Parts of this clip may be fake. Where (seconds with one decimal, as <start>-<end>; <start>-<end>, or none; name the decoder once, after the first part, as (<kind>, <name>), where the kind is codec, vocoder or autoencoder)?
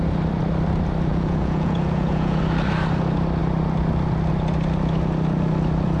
1.1-2.4 (vocoder, Vocos)